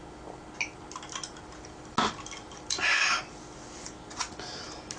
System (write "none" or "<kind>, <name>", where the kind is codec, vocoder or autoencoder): none